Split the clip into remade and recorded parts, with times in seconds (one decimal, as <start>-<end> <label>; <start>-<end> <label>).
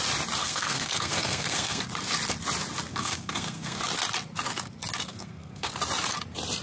0.0-0.4 recorded; 0.4-1.8 remade; 1.8-2.9 recorded; 2.9-3.8 remade; 3.8-5.1 recorded; 5.1-5.7 remade; 5.7-6.6 recorded